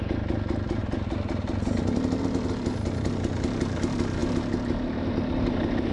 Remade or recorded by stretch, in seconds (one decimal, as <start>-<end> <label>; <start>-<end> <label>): 0.0-5.9 recorded